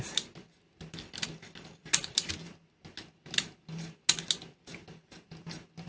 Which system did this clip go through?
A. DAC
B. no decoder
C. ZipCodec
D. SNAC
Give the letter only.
B